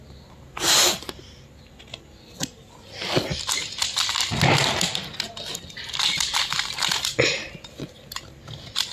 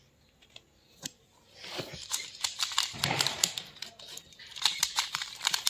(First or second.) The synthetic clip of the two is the second